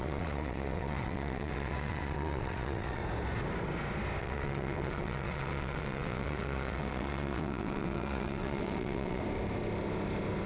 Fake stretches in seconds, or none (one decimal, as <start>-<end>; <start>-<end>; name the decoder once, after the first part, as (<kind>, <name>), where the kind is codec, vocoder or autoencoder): 0.0-3.0 (vocoder, WaveNeXt); 4.2-9.2